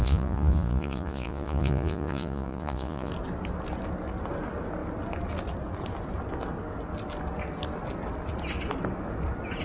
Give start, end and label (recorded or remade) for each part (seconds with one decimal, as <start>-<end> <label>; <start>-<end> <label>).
0.0-3.1 remade; 3.1-9.6 recorded